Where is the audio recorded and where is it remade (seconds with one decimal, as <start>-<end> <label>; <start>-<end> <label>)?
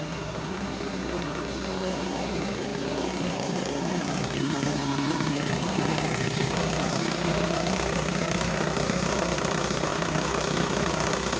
0.0-11.4 remade